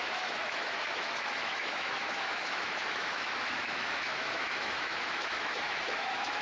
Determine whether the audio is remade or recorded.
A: remade